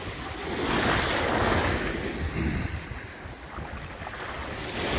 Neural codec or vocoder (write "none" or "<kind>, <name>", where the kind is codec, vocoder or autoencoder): none